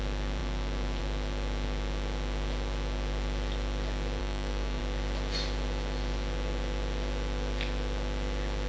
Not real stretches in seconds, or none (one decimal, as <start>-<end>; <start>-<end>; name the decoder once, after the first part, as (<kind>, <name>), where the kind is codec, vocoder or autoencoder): 4.2-4.8 (codec, DAC)